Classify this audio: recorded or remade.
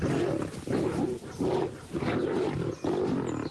recorded